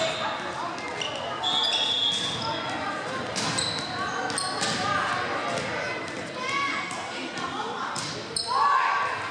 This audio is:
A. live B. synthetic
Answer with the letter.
A